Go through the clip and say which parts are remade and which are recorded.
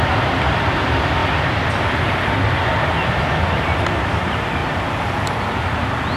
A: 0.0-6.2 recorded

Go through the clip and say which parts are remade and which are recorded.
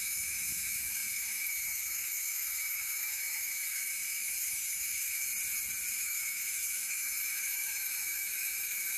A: 0.0-5.3 remade; 5.3-5.9 recorded; 5.9-9.0 remade